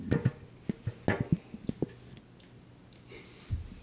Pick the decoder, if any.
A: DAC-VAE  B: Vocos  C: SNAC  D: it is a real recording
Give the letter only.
D